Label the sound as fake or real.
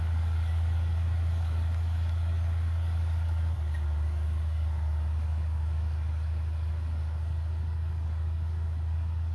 fake